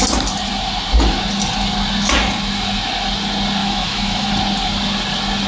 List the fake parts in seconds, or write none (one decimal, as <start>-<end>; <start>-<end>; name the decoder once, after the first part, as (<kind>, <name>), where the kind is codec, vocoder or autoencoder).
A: 3.6-4.3 (autoencoder, DAC-VAE)